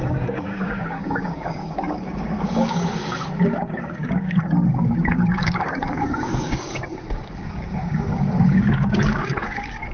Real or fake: fake